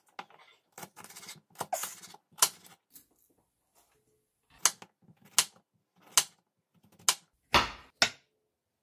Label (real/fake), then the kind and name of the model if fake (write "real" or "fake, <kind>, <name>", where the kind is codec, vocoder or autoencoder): real